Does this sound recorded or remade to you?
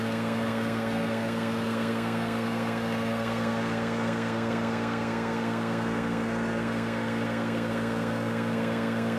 remade